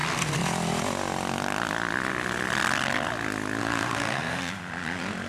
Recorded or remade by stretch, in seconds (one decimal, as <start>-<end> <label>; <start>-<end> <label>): 0.0-3.6 recorded; 3.6-4.5 remade; 4.5-5.3 recorded